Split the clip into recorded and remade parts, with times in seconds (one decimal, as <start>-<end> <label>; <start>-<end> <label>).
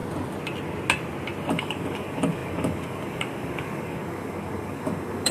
0.0-1.5 recorded; 1.5-5.3 remade